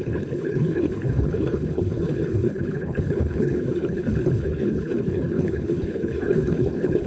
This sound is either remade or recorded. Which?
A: remade